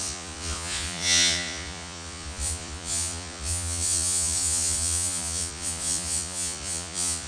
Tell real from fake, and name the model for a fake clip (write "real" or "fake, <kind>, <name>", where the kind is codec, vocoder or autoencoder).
fake, vocoder, Vocos